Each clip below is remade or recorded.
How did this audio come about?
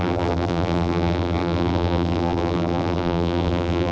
remade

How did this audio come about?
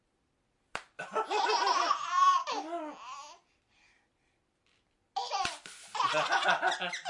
recorded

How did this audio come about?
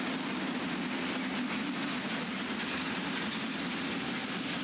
recorded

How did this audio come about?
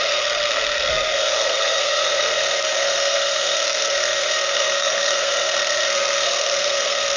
remade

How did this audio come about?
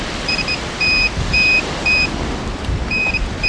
remade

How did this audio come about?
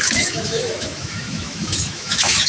remade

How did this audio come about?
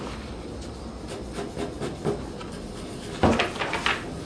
recorded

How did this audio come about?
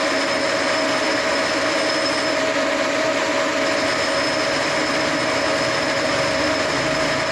recorded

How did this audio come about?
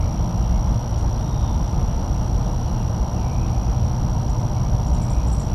recorded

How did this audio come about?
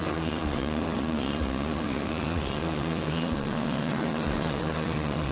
remade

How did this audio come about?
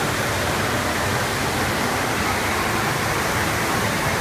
recorded